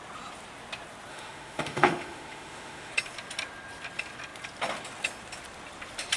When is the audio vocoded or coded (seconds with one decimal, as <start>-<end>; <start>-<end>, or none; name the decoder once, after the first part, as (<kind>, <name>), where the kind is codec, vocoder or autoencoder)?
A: 1.1-2.9 (autoencoder, DAC-VAE)